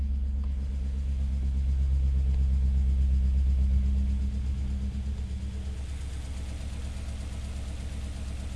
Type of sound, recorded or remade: recorded